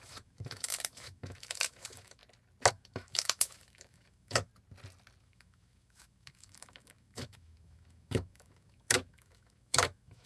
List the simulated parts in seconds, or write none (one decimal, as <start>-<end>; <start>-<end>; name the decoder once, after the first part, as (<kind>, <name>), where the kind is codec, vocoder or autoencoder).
0.0-2.2 (autoencoder, DAC-VAE); 2.7-4.5; 5.2-10.3